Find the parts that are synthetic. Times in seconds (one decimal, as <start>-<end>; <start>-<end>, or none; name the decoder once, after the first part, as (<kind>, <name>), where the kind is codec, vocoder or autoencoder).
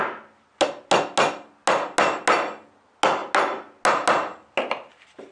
none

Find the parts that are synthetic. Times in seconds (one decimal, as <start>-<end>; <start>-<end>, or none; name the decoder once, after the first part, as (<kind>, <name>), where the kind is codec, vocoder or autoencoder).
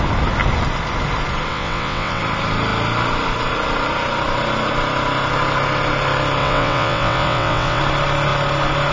1.5-2.2 (vocoder, WaveNeXt); 6.4-7.8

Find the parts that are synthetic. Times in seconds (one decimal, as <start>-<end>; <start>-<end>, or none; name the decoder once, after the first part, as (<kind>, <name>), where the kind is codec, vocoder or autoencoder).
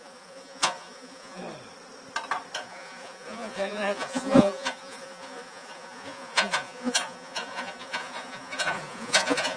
0.0-1.4 (vocoder, Vocos); 2.6-9.6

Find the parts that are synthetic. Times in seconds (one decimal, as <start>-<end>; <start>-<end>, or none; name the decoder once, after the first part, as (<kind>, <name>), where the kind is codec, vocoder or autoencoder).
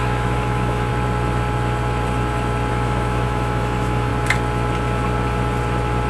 0.0-0.9 (autoencoder, DAC-VAE); 2.7-4.1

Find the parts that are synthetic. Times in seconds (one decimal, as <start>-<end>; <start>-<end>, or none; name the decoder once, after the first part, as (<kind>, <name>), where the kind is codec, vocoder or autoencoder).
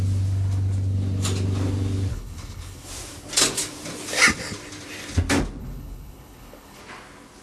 2.1-2.9 (codec, HILCodec); 5.6-6.8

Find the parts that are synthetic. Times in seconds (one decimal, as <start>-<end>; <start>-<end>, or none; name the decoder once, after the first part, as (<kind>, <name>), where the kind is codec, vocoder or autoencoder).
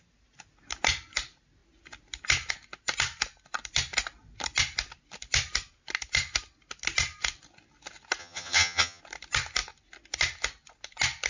8.2-9.0 (vocoder, HiFi-GAN)